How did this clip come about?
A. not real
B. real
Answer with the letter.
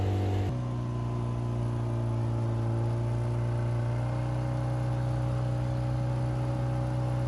B